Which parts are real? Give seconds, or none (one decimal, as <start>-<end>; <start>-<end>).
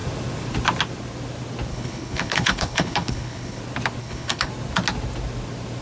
0.0-1.7; 3.6-4.0; 4.5-5.8